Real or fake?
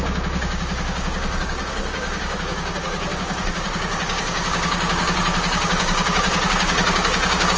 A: fake